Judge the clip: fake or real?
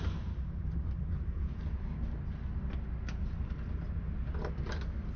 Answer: real